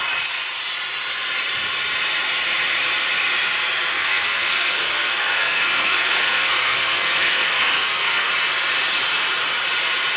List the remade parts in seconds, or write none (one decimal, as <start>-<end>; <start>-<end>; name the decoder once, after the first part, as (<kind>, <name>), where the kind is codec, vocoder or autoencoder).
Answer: 3.9-8.3 (codec, SNAC)